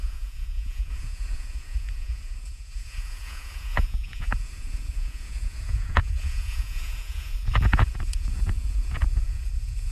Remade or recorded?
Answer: remade